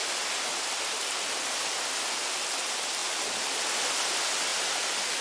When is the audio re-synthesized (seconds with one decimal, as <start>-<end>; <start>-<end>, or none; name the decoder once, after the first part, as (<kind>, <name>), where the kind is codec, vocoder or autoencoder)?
none